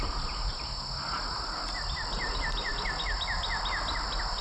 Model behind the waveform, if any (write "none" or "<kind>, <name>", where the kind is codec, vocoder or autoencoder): none